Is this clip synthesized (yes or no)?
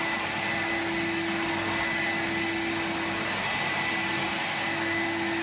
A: no